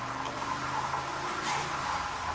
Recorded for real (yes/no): yes